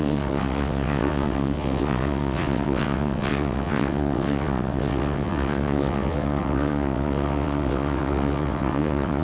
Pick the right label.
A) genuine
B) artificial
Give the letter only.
B